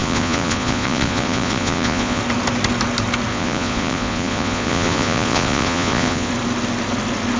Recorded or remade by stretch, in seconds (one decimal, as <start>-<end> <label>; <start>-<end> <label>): 0.0-2.2 remade; 2.2-3.3 recorded; 3.3-6.3 remade; 6.3-7.4 recorded